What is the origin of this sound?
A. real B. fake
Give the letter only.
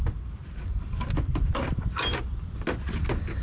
A